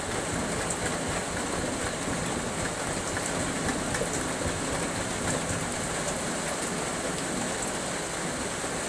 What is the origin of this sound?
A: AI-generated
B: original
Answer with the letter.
B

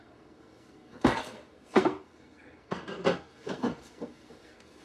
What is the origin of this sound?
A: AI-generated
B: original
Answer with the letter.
A